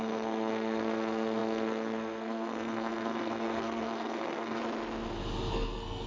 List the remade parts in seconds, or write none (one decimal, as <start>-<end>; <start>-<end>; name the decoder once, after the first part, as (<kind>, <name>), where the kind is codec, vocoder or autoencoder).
0.0-4.6 (codec, SNAC); 5.5-6.1